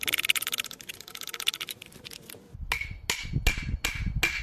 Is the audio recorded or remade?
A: recorded